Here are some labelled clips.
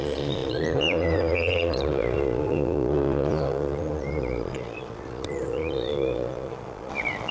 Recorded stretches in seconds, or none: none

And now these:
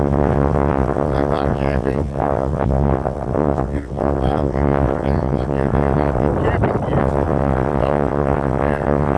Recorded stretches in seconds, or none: 6.3-7.0